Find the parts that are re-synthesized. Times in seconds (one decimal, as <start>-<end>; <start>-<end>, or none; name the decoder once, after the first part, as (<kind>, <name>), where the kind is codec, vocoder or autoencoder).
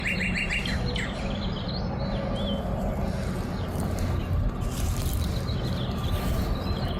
none